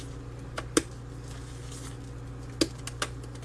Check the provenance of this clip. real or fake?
real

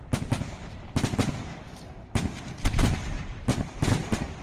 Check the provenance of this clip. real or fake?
real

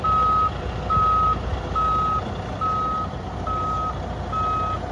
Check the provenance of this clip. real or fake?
real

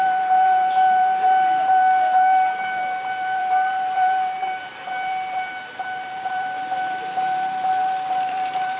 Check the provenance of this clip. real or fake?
fake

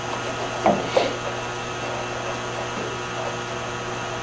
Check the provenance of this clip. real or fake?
real